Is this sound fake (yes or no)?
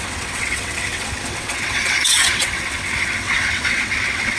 yes